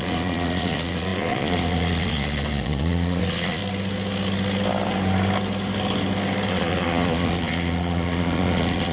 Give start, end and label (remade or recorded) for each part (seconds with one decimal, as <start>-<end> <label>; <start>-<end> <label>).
0.0-3.6 remade; 3.6-6.5 recorded; 6.5-8.9 remade